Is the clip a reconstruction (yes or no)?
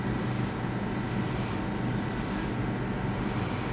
no